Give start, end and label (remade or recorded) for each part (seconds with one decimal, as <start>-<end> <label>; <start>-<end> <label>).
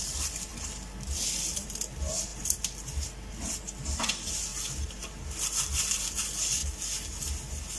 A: 0.0-7.8 recorded